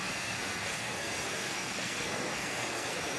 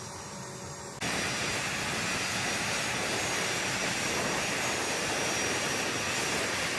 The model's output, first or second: first